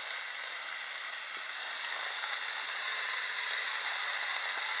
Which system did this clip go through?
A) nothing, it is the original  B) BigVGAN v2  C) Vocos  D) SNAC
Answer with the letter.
A